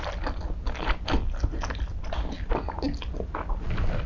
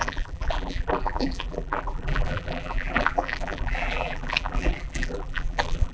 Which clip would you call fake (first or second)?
second